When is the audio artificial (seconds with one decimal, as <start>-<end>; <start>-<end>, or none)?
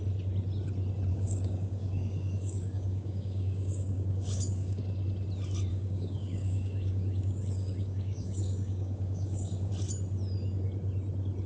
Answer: 1.1-4.8; 5.7-9.7